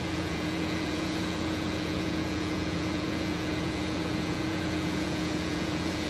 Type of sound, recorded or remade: remade